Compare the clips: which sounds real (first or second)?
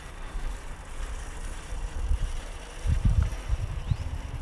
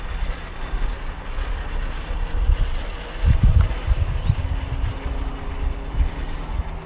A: second